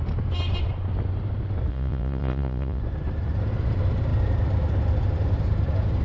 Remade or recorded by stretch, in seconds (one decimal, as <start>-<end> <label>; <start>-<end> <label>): 0.0-1.7 recorded; 1.7-2.8 remade; 2.8-6.0 recorded